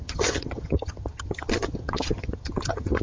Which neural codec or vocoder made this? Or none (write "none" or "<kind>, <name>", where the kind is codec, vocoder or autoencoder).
vocoder, HiFi-GAN